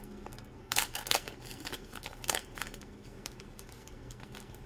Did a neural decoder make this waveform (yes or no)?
yes